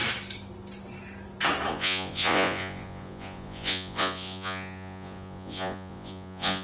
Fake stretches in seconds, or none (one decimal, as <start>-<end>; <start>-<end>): 1.7-6.6

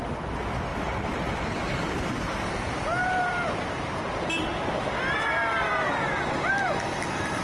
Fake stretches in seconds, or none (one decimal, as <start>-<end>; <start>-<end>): 0.7-1.9; 3.0-3.7; 4.5-6.5

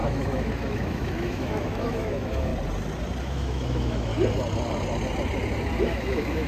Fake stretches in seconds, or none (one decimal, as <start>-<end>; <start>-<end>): 0.0-2.5; 3.2-4.1; 5.8-6.5

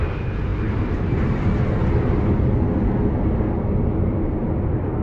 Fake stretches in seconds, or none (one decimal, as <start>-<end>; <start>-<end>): none

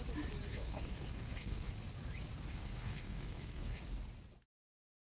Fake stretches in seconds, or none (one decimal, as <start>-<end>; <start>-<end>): 0.5-1.7; 2.5-3.8

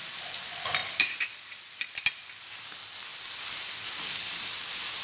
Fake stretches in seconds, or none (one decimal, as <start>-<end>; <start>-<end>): none

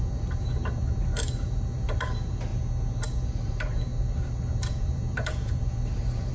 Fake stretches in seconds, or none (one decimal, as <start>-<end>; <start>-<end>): 0.0-2.5; 3.4-6.3

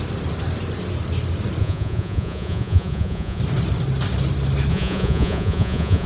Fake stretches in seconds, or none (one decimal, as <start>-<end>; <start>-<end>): 1.6-3.4; 4.7-6.1